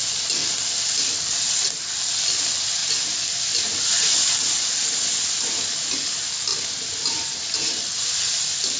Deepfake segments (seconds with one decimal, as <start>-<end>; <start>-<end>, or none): none

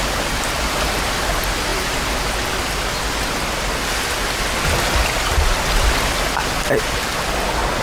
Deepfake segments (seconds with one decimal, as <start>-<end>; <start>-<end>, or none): none

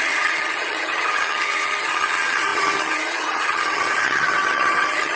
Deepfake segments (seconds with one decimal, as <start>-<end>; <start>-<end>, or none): 0.0-5.2

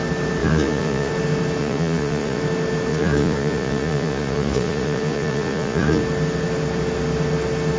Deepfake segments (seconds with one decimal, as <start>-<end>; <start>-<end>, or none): 0.4-1.1; 1.6-2.4; 2.9-6.0

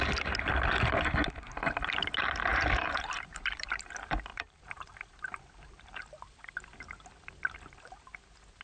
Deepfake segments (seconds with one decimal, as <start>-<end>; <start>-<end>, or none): 2.5-3.9; 4.3-6.0

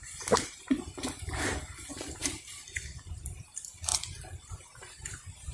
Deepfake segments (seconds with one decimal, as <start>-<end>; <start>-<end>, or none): 0.0-5.5

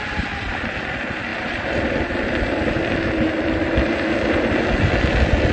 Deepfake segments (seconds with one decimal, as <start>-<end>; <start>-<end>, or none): 1.3-4.6